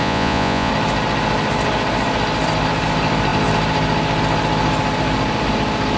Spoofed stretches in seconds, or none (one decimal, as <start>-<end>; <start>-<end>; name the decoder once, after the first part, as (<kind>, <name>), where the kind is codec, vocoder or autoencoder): 0.0-0.7 (vocoder, Vocos)